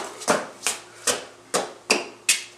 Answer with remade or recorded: recorded